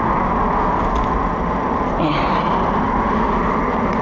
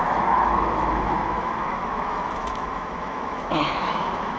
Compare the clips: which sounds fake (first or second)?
second